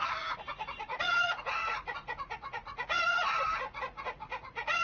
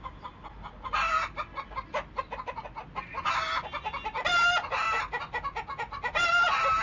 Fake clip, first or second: first